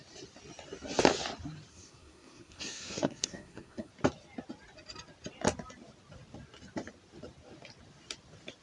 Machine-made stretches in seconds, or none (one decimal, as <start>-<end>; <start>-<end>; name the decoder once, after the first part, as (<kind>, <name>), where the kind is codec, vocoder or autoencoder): 1.7-3.9 (codec, SNAC)